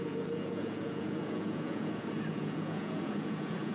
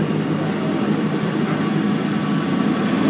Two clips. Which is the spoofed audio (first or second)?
first